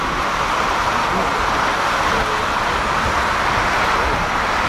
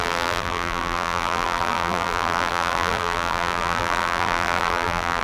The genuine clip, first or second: first